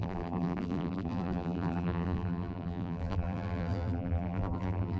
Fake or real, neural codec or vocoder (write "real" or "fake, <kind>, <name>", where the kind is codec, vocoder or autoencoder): fake, vocoder, BigVGAN v2